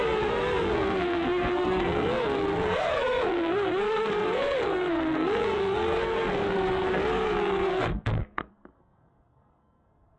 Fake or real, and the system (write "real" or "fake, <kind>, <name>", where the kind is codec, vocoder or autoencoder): fake, codec, SNAC